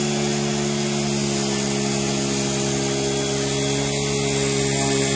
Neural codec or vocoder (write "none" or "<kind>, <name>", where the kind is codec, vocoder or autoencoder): none